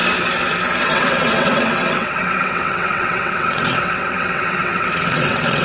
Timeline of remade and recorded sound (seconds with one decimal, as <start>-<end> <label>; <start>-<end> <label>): 0.0-0.8 recorded; 0.8-5.6 remade